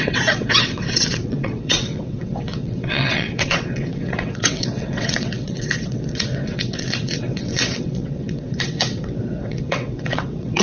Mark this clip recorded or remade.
remade